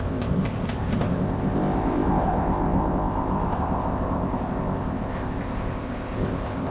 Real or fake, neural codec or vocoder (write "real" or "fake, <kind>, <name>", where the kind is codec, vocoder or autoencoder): fake, codec, ZipCodec